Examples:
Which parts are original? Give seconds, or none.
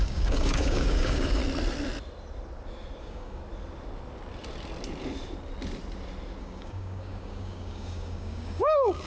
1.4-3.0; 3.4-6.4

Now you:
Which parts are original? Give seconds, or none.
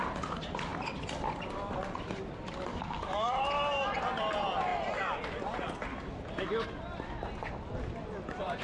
0.0-2.7; 3.3-8.6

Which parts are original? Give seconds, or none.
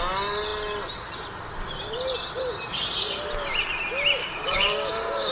0.0-4.2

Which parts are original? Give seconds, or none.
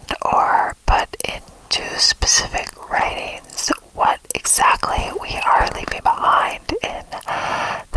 0.0-8.0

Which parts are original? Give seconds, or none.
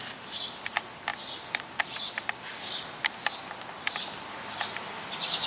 0.0-5.5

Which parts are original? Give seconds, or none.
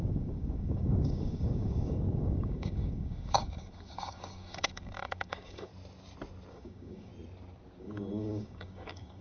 5.7-6.5; 7.1-7.8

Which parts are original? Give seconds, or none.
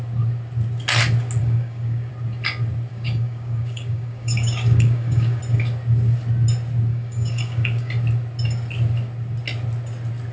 0.0-1.4; 2.1-2.9; 5.4-6.9; 7.9-10.3